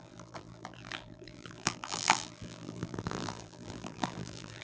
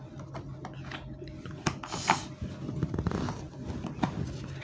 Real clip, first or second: second